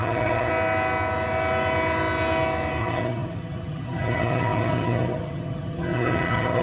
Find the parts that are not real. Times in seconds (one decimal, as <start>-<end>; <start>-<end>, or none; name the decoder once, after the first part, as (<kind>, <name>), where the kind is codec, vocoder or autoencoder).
0.0-0.5 (vocoder, HiFi-GAN); 2.8-6.6